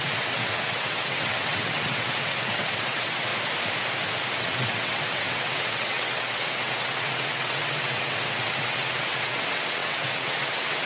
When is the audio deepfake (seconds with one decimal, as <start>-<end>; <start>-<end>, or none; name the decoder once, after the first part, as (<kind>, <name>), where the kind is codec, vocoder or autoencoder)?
0.0-3.3 (vocoder, WaveNeXt); 4.4-10.9